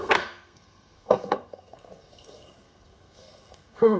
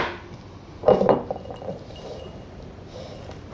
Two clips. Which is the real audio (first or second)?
second